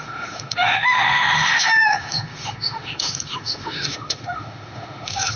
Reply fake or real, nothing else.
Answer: fake